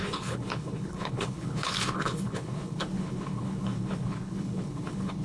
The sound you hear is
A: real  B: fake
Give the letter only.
B